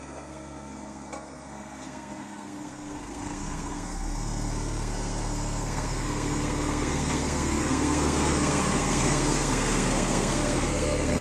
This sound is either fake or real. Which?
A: fake